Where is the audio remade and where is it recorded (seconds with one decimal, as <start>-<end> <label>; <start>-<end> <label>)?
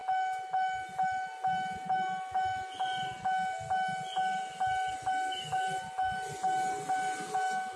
0.0-7.8 recorded